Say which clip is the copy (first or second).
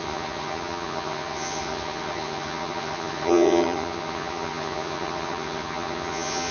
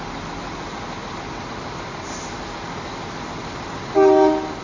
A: first